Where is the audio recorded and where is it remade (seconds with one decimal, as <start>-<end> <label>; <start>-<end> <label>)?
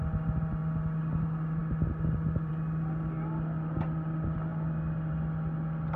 0.0-6.0 recorded